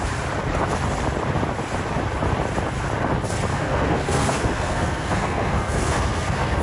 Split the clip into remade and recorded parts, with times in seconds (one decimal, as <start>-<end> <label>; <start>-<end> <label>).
0.0-3.5 recorded; 3.5-6.6 remade